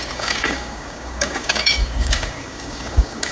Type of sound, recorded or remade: remade